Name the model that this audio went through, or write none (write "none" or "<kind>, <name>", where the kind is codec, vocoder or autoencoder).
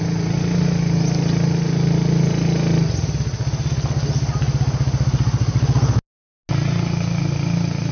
none